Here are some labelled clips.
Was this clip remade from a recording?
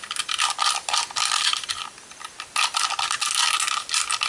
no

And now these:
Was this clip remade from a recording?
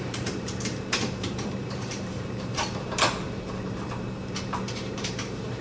yes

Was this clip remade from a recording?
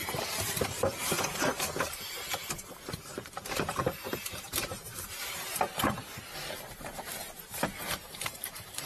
yes